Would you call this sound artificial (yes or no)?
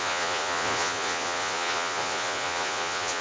yes